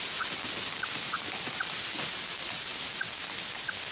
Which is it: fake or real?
real